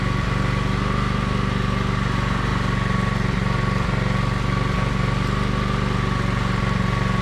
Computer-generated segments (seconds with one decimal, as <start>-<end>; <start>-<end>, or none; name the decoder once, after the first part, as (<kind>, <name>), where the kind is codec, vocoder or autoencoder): none